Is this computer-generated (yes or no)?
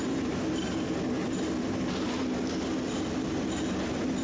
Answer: no